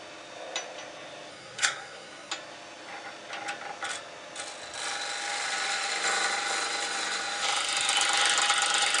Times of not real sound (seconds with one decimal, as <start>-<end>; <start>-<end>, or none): 1.3-2.3